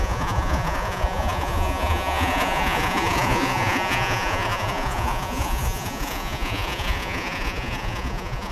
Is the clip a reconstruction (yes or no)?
yes